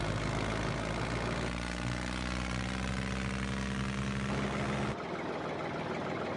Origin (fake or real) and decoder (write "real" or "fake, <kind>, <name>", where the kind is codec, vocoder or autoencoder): real